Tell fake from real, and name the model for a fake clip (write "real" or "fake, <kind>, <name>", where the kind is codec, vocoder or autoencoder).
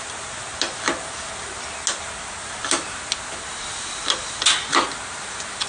real